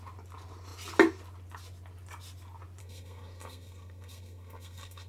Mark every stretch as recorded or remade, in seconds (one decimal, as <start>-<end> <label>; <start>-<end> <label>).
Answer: 0.0-2.8 recorded; 2.8-5.1 remade